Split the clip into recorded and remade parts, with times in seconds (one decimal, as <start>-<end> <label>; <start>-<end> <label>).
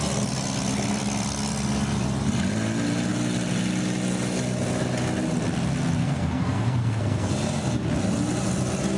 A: 0.0-6.0 recorded; 6.0-7.3 remade; 7.3-9.0 recorded